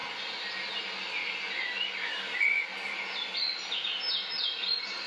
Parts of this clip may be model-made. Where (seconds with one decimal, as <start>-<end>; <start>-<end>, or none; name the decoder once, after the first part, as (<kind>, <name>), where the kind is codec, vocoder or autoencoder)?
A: none